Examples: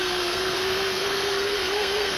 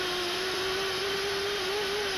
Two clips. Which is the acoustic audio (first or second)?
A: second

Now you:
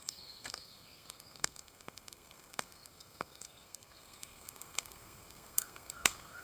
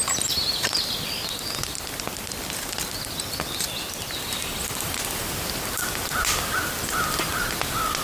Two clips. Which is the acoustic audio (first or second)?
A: second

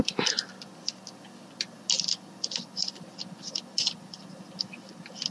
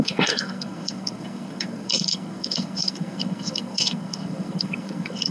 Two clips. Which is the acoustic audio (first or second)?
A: first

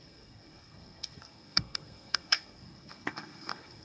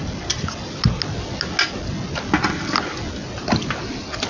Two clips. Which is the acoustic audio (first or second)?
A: second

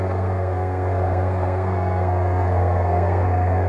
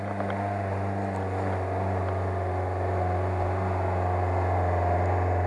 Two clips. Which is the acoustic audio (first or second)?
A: second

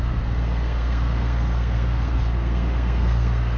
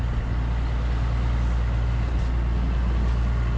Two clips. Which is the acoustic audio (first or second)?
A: second